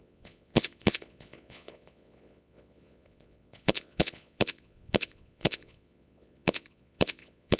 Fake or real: fake